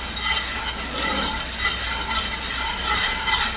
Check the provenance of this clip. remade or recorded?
recorded